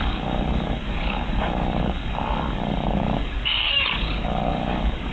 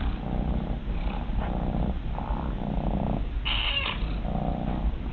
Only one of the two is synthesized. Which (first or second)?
first